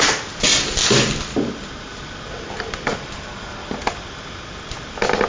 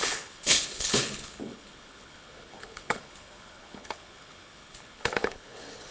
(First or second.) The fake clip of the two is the second